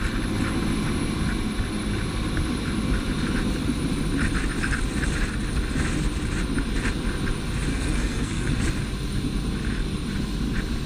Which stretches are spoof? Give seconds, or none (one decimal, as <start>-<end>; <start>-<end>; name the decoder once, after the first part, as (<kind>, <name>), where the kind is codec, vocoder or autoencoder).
7.7-8.6 (codec, SNAC)